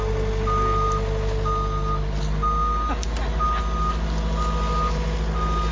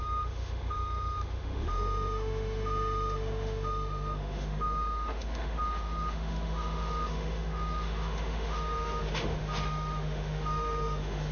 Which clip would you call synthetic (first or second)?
second